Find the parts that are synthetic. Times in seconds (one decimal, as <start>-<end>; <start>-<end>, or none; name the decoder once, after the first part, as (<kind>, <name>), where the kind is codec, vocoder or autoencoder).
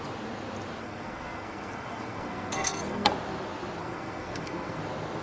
0.8-3.1 (codec, SNAC); 3.8-4.8